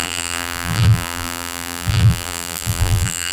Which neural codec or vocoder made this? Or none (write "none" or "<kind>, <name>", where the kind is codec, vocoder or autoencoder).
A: vocoder, BigVGAN v2